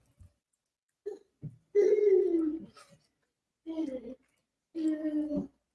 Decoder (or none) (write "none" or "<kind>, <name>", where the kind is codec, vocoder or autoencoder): none